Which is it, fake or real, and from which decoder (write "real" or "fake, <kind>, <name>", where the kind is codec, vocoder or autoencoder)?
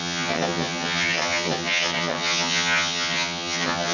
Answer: fake, vocoder, HiFi-GAN